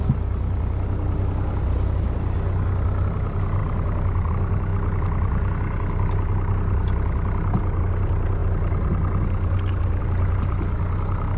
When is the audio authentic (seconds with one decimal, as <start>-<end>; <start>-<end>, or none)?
0.0-3.6; 4.3-11.4